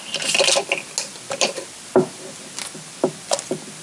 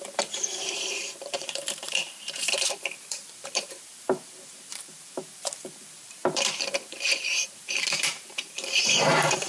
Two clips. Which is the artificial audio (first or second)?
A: second